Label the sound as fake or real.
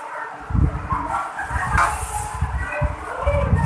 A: real